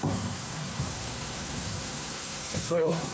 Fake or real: fake